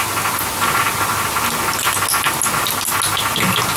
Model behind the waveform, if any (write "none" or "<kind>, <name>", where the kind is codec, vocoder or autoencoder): none